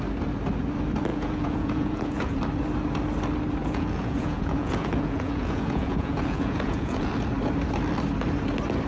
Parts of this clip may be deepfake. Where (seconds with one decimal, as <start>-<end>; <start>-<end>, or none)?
1.1-2.4; 3.6-7.1